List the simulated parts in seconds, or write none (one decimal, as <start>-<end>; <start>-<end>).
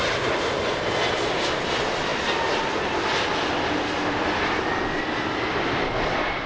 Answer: none